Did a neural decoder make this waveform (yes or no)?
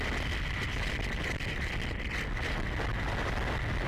no